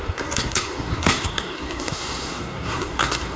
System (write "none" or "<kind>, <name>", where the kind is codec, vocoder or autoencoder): codec, SNAC